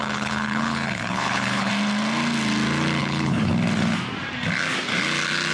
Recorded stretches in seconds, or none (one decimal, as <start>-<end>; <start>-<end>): 1.7-3.0; 3.5-5.5